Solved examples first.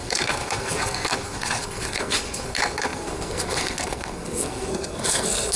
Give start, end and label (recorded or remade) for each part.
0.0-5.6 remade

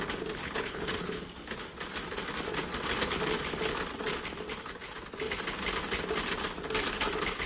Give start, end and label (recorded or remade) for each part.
0.0-0.4 recorded; 0.4-1.2 remade; 1.2-7.5 recorded

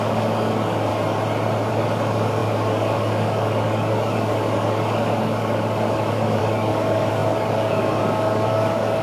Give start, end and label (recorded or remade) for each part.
0.0-0.9 remade; 0.9-1.7 recorded; 1.7-9.0 remade

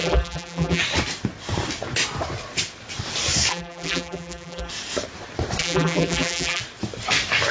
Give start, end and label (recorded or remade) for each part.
0.0-0.8 remade; 0.8-3.5 recorded; 3.5-4.7 remade; 4.7-5.6 recorded; 5.6-6.6 remade; 6.6-7.5 recorded

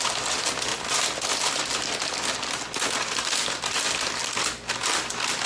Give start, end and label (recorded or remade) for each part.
0.0-0.7 recorded; 0.7-4.0 remade; 4.0-5.5 recorded

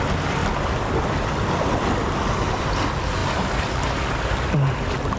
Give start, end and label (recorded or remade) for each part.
0.0-3.2 recorded; 3.2-4.0 remade; 4.0-5.2 recorded

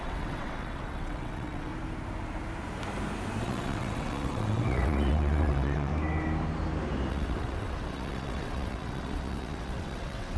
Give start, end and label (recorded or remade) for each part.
0.0-1.7 remade; 1.7-3.4 recorded; 3.4-5.9 remade; 5.9-7.1 recorded; 7.1-10.4 remade